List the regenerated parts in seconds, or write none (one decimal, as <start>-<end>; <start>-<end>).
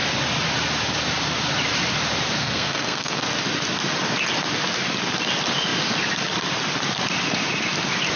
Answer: 2.4-3.2